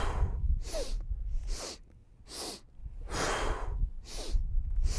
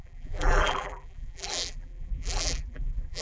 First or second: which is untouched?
first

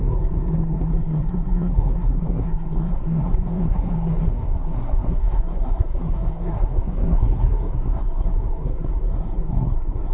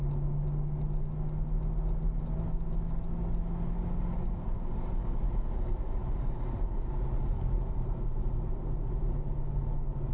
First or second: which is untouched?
second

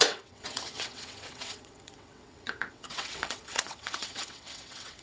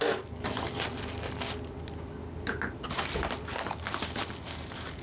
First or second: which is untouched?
second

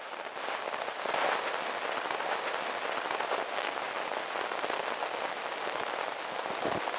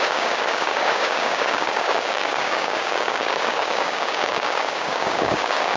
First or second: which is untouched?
first